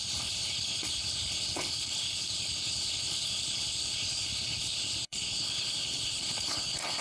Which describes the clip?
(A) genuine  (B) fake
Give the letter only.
B